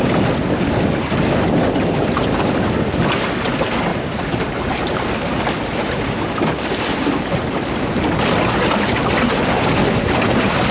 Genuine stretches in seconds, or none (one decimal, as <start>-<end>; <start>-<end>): 0.0-3.9; 5.4-10.7